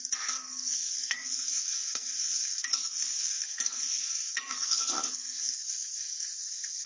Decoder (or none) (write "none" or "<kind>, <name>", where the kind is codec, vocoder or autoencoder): codec, SNAC